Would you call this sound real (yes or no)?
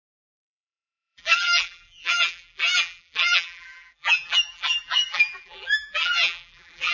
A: no